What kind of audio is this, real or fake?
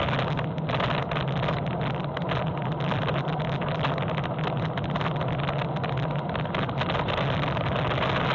real